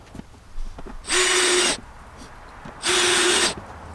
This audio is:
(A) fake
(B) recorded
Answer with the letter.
B